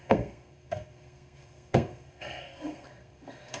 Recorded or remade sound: remade